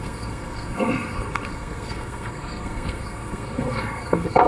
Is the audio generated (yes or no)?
yes